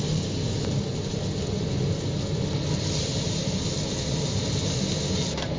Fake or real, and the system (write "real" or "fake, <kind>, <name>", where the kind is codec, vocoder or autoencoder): real